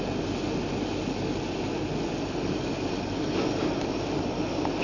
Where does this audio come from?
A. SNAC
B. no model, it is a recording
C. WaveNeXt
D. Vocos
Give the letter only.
B